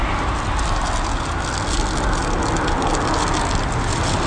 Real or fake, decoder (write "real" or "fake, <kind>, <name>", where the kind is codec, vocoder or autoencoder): real